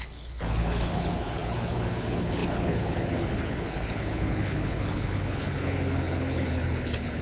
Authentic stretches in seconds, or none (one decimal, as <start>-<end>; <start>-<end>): none